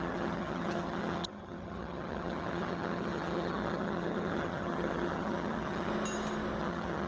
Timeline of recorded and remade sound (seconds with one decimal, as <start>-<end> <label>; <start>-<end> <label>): 0.0-5.9 remade; 5.9-6.6 recorded; 6.6-7.1 remade